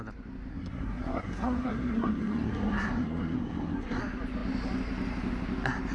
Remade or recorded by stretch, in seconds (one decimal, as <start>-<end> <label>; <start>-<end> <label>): 0.0-0.5 recorded; 0.5-4.0 remade; 4.0-5.9 recorded